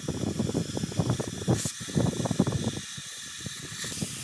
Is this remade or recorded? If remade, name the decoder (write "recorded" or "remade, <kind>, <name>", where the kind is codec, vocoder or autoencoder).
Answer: recorded